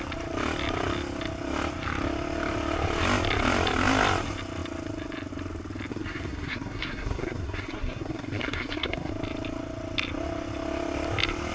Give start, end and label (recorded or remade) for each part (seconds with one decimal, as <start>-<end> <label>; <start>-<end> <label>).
0.0-5.9 recorded; 5.9-9.1 remade; 9.1-11.5 recorded